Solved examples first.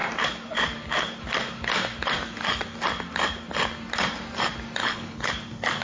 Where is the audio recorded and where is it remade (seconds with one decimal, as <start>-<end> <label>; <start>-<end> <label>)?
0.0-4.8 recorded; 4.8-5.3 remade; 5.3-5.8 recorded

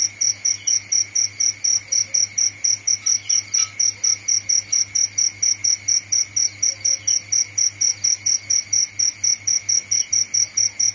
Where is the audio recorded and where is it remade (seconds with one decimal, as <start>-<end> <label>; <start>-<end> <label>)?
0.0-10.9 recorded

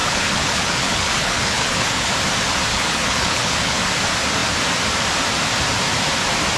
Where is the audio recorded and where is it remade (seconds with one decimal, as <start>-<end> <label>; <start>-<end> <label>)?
0.0-2.1 remade; 2.1-2.7 recorded; 2.7-3.8 remade; 3.8-6.6 recorded

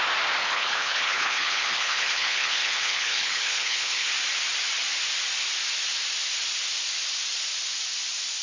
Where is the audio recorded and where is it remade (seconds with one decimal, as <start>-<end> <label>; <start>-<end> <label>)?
0.0-0.4 recorded; 0.4-4.1 remade; 4.1-8.4 recorded